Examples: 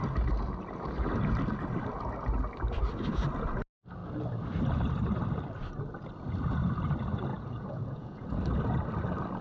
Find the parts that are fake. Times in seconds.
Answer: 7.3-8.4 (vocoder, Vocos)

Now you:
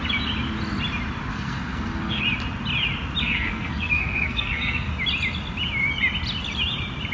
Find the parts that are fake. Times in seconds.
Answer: 1.3-2.2 (codec, SNAC); 3.2-4.9

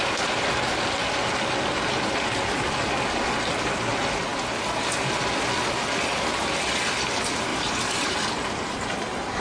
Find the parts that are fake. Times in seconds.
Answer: 7.5-9.4 (vocoder, BigVGAN v2)

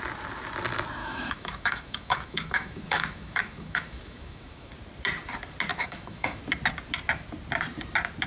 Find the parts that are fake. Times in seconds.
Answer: 1.0-4.7 (autoencoder, DAC-VAE); 5.7-6.4